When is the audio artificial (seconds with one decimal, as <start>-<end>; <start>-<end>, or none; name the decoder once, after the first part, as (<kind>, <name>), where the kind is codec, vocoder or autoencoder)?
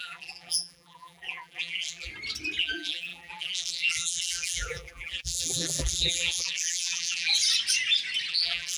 0.0-2.1 (vocoder, BigVGAN v2); 2.6-7.3; 8.3-8.8